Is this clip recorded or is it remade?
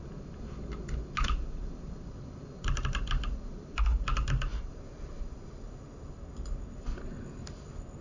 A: recorded